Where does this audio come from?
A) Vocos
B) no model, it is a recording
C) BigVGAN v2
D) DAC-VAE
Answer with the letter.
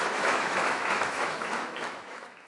D